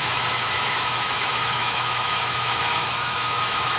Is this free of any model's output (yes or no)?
no